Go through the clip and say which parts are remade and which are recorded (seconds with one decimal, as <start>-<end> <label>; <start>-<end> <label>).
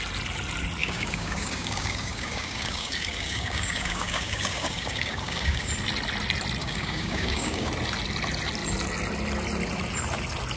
0.0-0.8 recorded; 0.8-5.7 remade; 5.7-6.6 recorded; 6.6-7.7 remade; 7.7-10.6 recorded